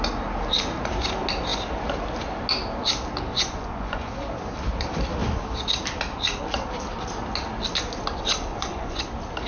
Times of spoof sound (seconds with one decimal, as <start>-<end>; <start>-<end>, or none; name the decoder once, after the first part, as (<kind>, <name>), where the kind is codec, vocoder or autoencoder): 3.3-4.1 (vocoder, Vocos); 8.5-9.0